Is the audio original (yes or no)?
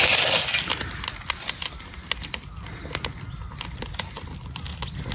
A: yes